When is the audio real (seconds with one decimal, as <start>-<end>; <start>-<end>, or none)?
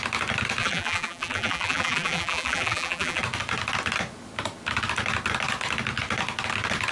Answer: 0.0-0.6; 3.2-6.9